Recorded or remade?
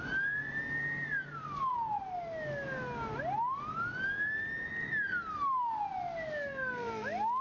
recorded